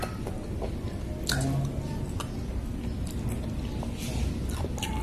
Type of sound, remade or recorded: recorded